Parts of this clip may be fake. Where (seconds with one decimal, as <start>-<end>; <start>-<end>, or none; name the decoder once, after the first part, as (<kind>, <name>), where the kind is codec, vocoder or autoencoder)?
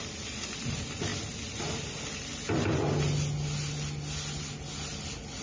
none